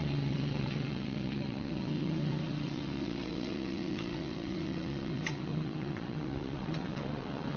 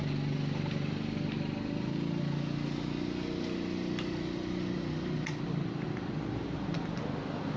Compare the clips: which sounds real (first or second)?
second